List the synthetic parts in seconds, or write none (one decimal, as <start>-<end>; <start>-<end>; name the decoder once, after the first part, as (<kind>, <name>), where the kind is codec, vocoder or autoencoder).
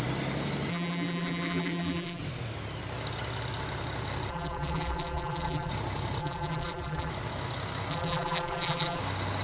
0.7-2.2 (vocoder, BigVGAN v2); 4.3-5.7; 6.2-7.1; 7.9-9.0